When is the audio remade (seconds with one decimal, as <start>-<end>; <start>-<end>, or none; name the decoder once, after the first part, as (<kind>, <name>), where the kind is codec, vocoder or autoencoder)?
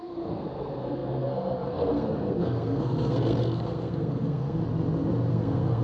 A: 0.0-4.6 (codec, SNAC); 5.3-5.8